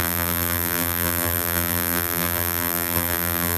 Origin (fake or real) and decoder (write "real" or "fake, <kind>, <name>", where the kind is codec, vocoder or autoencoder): fake, vocoder, BigVGAN v2